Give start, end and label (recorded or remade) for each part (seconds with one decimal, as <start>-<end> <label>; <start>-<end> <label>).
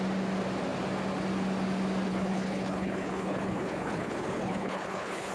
0.0-2.1 recorded; 2.1-5.3 remade